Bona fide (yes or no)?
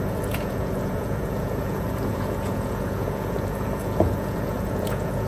no